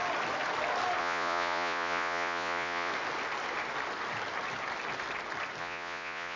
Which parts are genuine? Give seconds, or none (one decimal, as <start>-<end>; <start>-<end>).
0.0-1.0; 2.9-5.6